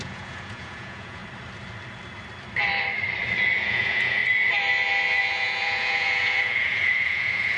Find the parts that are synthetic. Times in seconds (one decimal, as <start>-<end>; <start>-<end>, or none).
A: 0.0-1.2; 3.6-4.2; 5.2-7.6